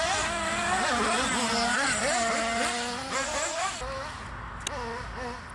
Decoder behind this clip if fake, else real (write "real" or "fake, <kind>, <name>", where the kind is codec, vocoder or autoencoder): real